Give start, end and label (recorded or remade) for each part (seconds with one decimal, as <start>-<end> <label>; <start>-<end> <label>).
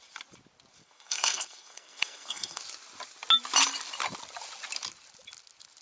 0.0-0.8 recorded; 0.8-2.6 remade; 2.6-5.8 recorded